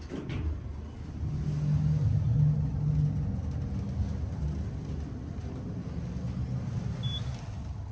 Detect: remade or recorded recorded